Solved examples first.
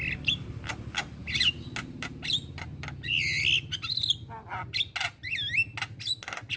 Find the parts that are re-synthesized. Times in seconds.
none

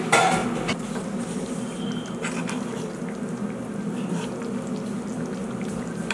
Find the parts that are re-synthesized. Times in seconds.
none